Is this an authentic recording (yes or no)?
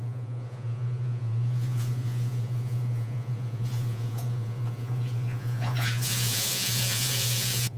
no